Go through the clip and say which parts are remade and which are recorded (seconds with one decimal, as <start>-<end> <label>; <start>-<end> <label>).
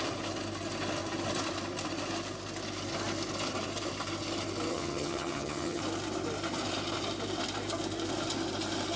0.0-4.7 recorded; 4.7-5.8 remade; 5.8-9.0 recorded